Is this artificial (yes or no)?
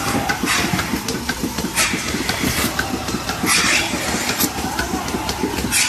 yes